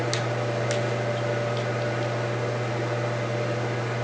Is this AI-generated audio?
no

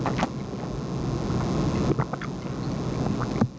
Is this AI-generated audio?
no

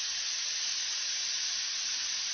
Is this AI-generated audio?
no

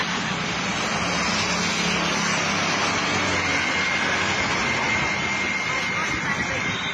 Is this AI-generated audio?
no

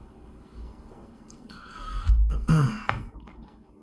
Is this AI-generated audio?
yes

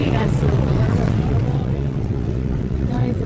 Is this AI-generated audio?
yes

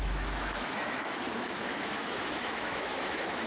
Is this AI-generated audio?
yes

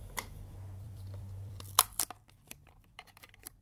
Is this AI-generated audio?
yes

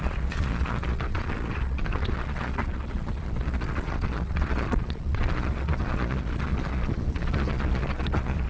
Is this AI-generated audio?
yes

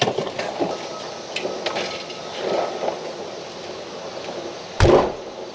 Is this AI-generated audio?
no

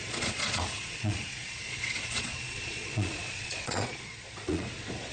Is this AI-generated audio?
yes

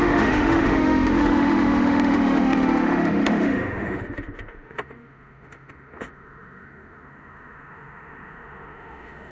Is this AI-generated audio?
yes